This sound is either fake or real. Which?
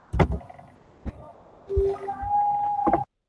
real